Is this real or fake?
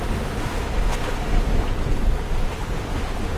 real